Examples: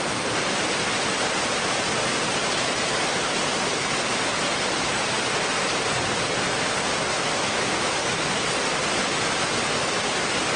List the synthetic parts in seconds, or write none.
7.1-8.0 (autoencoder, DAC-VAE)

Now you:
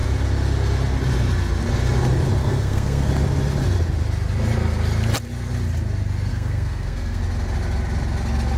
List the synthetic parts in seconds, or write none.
2.4-3.1 (codec, SNAC); 6.3-7.2

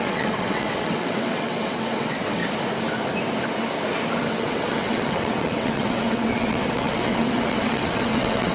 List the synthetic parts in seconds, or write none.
0.0-2.4 (vocoder, WaveNeXt); 4.2-8.5

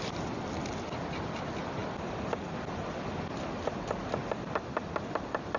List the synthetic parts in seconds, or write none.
none

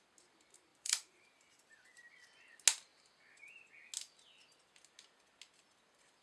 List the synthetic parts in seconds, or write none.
0.7-2.1 (vocoder, BigVGAN v2)